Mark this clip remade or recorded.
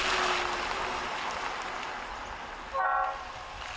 recorded